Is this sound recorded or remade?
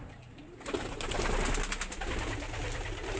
recorded